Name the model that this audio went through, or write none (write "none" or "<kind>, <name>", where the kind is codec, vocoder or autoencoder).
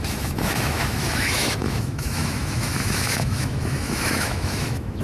autoencoder, DAC-VAE